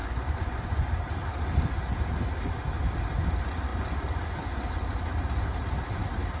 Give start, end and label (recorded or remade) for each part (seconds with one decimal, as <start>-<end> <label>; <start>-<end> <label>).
0.0-0.9 remade; 0.9-6.4 recorded